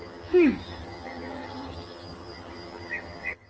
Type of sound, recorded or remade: remade